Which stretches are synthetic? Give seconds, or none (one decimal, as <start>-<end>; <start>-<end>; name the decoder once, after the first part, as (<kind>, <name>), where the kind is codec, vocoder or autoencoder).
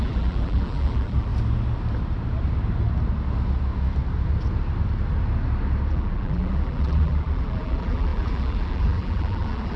0.0-1.3 (vocoder, BigVGAN v2); 5.9-9.8